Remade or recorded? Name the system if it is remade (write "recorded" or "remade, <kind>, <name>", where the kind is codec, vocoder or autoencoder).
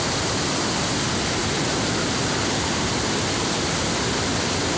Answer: recorded